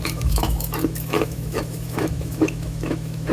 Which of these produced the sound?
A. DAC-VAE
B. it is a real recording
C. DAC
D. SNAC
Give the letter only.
A